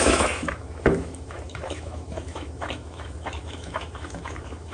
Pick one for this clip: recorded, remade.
remade